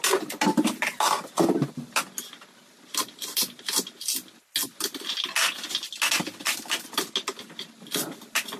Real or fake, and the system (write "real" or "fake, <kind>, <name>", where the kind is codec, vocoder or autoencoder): real